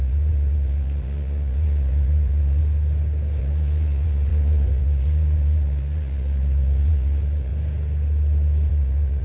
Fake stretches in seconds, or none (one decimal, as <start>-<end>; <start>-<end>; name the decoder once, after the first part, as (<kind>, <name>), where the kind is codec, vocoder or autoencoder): 0.0-2.6 (vocoder, Vocos); 3.4-7.5; 8.7-9.2